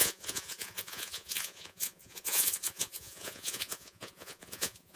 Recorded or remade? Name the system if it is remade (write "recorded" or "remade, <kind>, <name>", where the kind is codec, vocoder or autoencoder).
remade, vocoder, Vocos